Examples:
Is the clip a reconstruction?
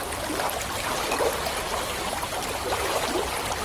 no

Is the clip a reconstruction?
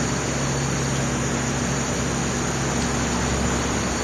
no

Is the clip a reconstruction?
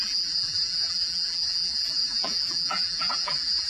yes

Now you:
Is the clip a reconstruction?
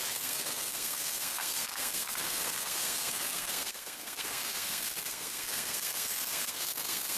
yes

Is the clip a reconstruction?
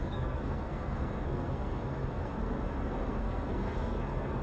yes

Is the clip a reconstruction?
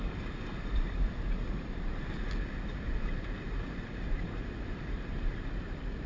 yes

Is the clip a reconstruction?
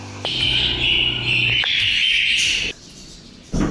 no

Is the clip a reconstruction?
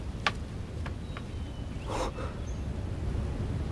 no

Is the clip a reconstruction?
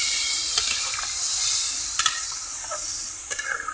no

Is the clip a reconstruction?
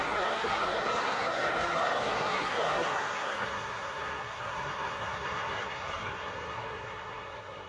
yes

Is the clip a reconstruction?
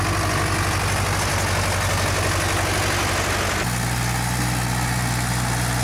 no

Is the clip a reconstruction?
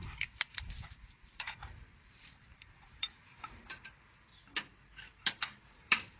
yes